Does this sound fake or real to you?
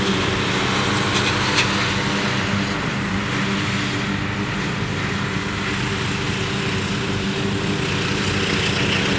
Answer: real